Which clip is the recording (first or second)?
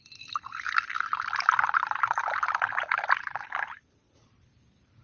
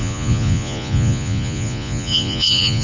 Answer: first